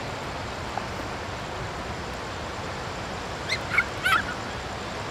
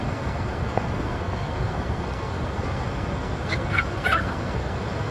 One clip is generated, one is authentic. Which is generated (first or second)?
second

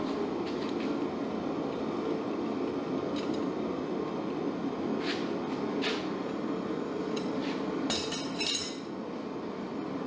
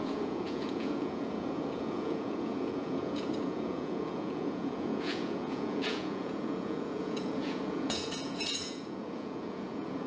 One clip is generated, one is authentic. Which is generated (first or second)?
second